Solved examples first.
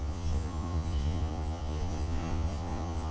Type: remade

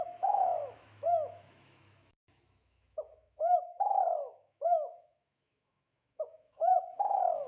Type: remade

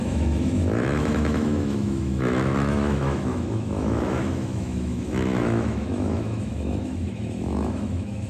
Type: remade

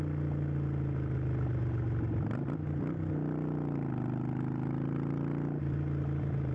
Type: recorded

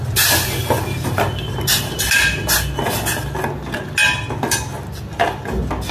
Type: recorded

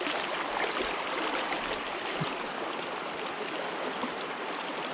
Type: recorded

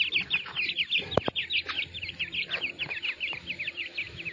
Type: remade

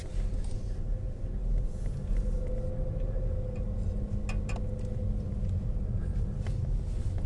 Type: recorded